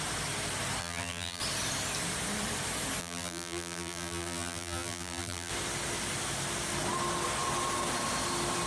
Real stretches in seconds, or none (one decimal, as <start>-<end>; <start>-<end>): 0.0-0.8; 1.4-3.0; 5.5-8.7